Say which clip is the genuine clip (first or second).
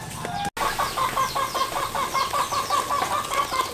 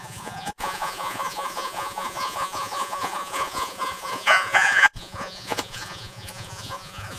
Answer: first